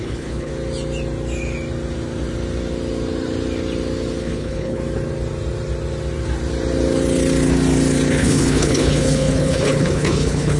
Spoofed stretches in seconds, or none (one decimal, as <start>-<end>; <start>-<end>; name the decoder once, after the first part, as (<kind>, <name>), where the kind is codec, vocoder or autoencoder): 0.0-0.5 (codec, HILCodec); 4.2-4.8; 8.1-10.6